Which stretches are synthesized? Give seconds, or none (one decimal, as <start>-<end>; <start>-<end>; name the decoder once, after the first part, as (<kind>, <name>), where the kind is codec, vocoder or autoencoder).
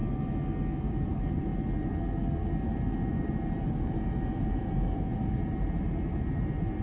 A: 0.9-1.5 (vocoder, BigVGAN v2); 3.1-6.8